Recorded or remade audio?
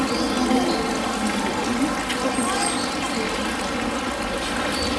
recorded